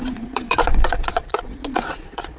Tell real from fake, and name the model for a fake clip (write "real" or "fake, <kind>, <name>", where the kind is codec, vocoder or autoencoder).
fake, vocoder, Vocos